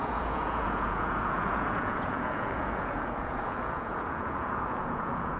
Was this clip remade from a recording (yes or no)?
yes